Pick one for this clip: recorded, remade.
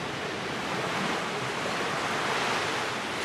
recorded